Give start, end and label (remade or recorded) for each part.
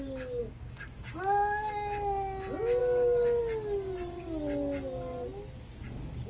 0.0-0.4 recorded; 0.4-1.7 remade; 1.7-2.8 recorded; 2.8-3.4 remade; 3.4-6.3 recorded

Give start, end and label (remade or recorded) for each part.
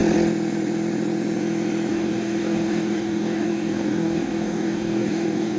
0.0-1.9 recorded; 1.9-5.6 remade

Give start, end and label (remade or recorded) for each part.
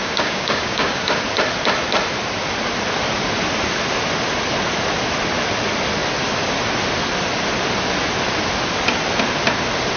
0.0-1.2 remade; 1.2-10.0 recorded